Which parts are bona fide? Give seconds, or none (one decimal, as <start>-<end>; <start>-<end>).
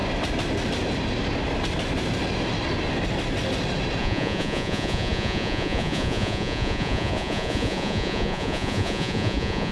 0.0-4.0